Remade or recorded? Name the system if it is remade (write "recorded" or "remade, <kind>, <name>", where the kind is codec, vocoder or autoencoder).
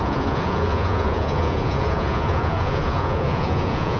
remade, vocoder, Vocos